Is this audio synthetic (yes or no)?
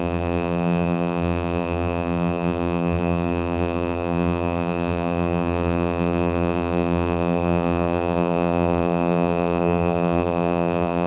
yes